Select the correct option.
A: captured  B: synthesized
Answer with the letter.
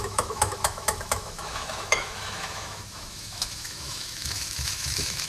B